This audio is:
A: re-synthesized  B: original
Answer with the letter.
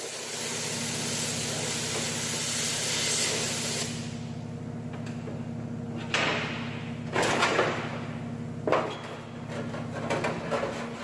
B